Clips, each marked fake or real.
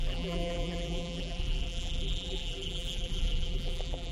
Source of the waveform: fake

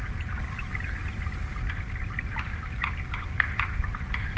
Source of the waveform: real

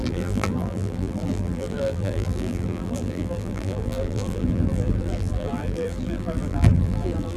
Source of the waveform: fake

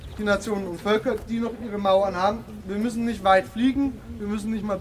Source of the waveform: real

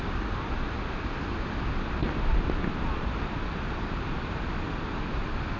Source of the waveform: real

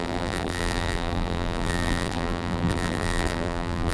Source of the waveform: fake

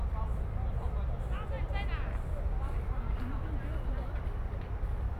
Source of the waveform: real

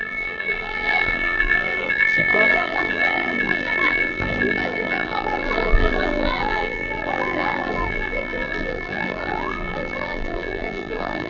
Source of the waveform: fake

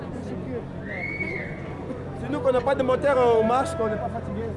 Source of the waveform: real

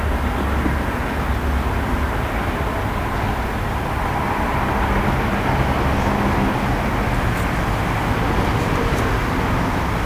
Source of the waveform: real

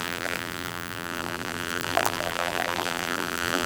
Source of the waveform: fake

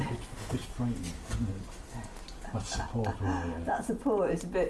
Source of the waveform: real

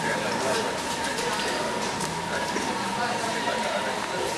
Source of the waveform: fake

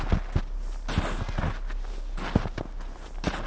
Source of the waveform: real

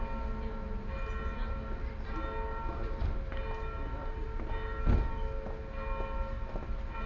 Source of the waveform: real